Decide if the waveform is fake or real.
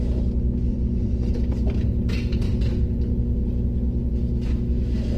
real